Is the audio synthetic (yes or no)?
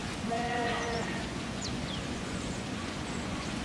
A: yes